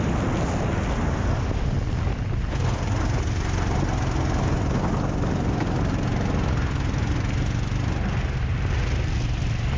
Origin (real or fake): real